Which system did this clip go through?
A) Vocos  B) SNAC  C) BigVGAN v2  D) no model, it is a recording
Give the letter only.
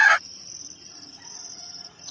A